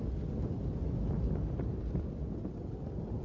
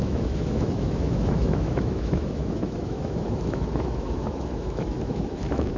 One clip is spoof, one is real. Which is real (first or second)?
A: first